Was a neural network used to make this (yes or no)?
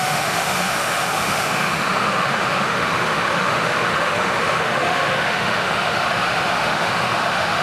yes